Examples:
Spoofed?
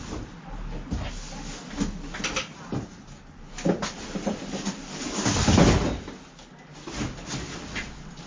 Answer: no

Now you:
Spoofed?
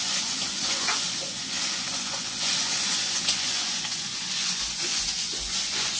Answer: yes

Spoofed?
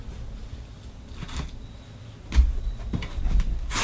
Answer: no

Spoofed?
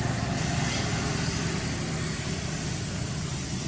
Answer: no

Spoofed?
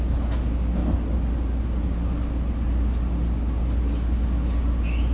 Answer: no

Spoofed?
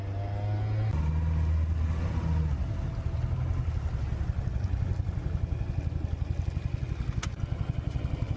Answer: no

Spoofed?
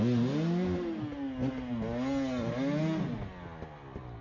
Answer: no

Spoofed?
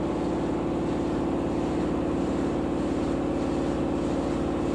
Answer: no